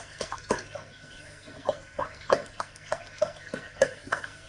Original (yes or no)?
no